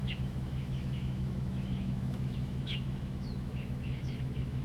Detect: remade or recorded remade